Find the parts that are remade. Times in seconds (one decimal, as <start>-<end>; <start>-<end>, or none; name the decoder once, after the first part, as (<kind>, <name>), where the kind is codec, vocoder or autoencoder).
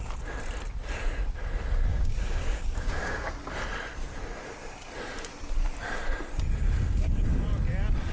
1.9-3.3 (codec, DAC)